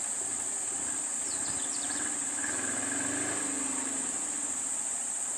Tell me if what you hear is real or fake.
real